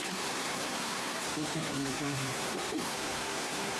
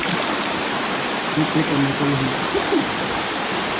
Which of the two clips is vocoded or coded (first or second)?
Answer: first